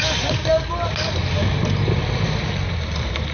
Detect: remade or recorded recorded